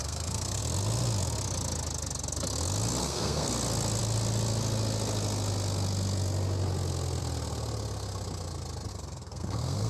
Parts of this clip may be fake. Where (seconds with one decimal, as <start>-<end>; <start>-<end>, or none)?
0.0-0.6; 3.0-3.5; 8.9-9.9